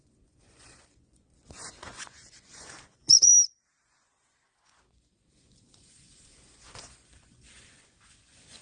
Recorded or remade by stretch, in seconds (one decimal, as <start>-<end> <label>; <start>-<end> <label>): 0.0-3.3 remade; 3.3-3.8 recorded; 3.8-8.6 remade